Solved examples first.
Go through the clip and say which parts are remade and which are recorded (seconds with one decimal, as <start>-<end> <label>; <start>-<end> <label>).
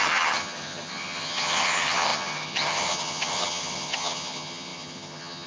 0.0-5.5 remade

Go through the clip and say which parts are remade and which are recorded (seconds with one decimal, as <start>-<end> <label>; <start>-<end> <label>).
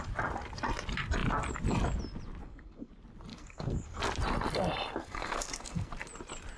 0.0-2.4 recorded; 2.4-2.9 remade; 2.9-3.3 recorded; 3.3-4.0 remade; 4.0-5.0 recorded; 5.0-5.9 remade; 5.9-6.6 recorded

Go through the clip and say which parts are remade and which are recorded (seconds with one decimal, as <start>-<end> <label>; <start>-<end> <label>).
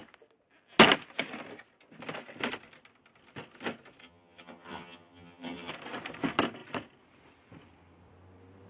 0.0-4.0 recorded; 4.0-5.7 remade; 5.7-8.7 recorded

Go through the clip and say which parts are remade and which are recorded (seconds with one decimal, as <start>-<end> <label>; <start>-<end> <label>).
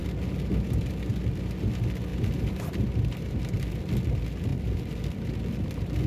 0.0-2.1 recorded; 2.1-4.0 remade; 4.0-4.5 recorded; 4.5-5.3 remade; 5.3-6.1 recorded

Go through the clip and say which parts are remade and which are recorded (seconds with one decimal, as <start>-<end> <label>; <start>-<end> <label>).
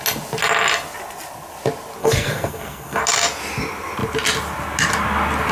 0.0-2.0 recorded; 2.0-3.0 remade; 3.0-5.5 recorded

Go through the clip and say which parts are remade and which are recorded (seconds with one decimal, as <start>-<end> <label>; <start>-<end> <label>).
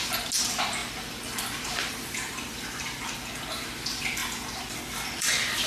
0.0-0.8 recorded; 0.8-3.1 remade; 3.1-4.2 recorded; 4.2-5.7 remade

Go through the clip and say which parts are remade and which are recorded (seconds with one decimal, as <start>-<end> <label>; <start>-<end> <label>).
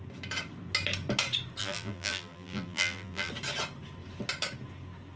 0.0-1.6 recorded; 1.6-3.3 remade; 3.3-5.2 recorded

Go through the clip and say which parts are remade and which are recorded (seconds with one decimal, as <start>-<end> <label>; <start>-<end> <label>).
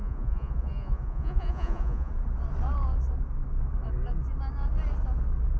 0.0-2.1 remade; 2.1-5.6 recorded